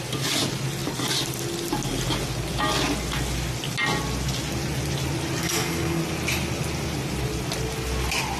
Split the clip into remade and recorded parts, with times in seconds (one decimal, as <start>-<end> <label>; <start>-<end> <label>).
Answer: 0.0-5.4 recorded; 5.4-6.0 remade; 6.0-8.4 recorded